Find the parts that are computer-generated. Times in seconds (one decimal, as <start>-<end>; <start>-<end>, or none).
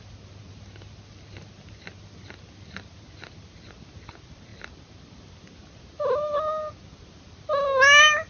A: none